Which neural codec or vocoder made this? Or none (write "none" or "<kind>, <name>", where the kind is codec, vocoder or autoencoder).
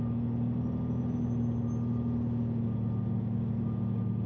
none